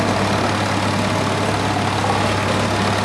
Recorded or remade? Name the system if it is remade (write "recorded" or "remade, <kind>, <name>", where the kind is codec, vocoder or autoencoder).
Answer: recorded